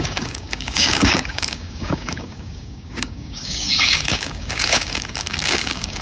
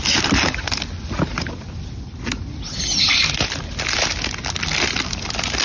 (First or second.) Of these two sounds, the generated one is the first